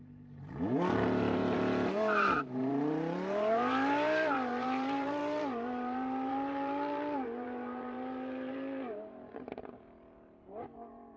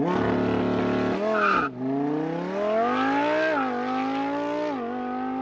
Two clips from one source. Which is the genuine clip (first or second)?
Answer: second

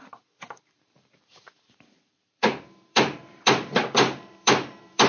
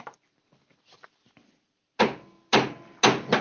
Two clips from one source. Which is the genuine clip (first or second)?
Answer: second